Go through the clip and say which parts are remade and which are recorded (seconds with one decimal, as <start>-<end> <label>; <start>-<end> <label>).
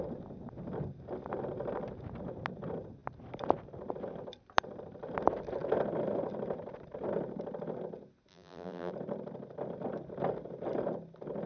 0.0-8.3 recorded; 8.3-8.9 remade; 8.9-11.5 recorded